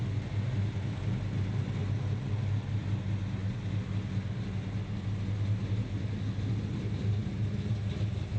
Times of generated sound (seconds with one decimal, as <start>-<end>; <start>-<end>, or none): none